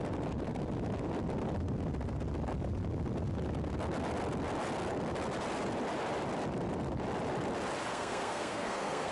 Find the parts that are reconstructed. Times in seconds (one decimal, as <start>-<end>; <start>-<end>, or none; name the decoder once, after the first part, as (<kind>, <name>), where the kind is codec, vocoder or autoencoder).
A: 7.9-9.1 (codec, SNAC)